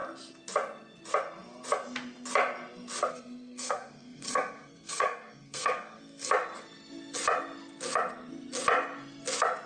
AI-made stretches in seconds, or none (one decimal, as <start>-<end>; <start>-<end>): 3.1-6.3